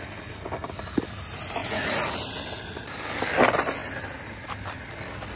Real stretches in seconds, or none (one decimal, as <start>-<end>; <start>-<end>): 0.0-1.6; 2.2-5.4

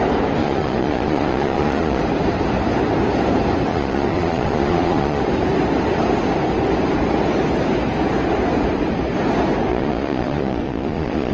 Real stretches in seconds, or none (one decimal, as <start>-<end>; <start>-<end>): 0.0-0.4; 2.0-3.7; 5.2-9.7